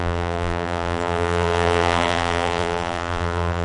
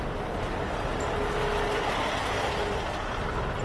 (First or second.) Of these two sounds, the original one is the second